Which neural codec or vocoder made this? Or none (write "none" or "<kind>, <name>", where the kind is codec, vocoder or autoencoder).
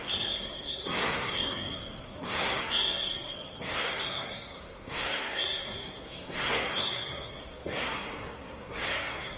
codec, SNAC